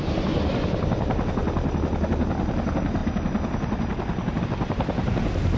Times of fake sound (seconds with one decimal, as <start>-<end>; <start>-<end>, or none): none